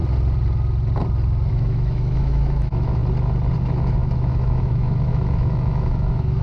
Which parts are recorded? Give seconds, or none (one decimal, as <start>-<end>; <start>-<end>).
0.0-1.5; 3.0-3.6